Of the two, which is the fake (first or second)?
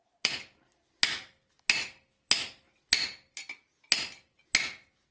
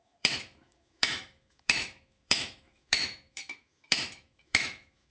second